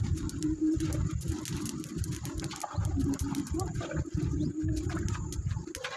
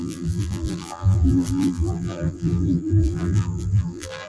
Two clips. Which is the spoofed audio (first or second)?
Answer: second